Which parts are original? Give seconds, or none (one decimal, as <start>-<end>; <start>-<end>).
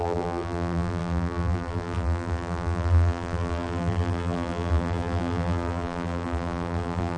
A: none